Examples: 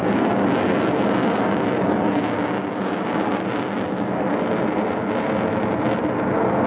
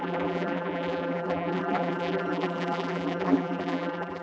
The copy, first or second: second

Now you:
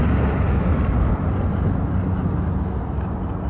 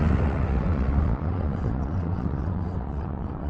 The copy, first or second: second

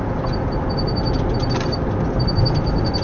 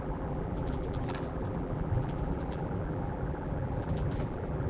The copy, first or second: second